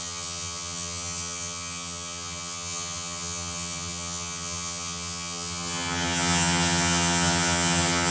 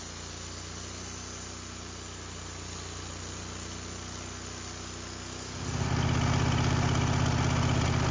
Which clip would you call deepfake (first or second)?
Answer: first